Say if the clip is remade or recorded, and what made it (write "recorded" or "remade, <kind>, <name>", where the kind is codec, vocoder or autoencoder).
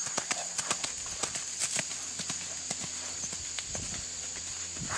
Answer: recorded